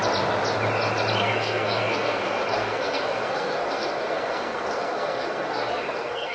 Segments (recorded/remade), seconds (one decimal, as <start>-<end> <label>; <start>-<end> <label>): 0.0-1.2 recorded; 1.2-6.3 remade